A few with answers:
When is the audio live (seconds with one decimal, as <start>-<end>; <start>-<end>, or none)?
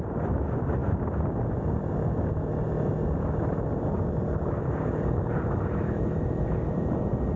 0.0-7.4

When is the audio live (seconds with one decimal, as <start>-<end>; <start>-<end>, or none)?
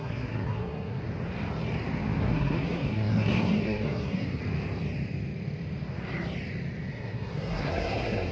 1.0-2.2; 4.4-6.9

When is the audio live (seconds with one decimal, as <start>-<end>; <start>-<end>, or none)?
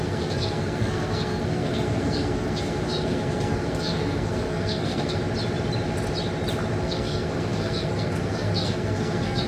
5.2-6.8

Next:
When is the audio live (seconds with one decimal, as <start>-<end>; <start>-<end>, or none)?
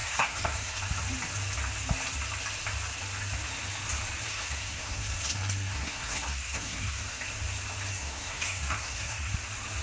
0.8-4.3; 7.0-7.9; 9.3-9.8